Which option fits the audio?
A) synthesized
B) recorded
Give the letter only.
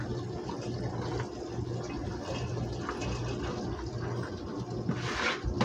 B